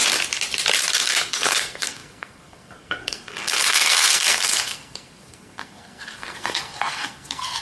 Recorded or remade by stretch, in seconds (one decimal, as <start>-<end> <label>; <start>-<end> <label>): 0.0-0.9 recorded; 0.9-7.6 remade